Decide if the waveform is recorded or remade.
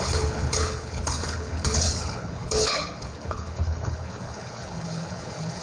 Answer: remade